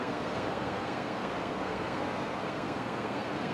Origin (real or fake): fake